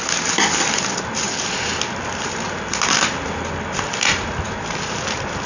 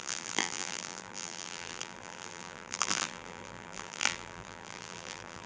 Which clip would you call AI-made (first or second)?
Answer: second